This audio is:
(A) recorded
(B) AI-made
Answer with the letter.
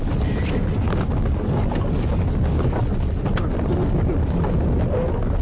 A